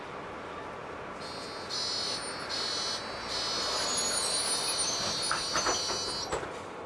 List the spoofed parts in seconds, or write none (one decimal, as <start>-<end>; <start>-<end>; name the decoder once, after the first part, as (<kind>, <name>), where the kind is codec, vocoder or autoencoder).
none